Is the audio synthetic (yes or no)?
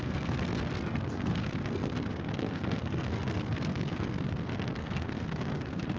yes